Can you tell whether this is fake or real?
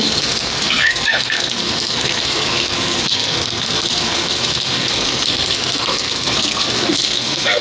fake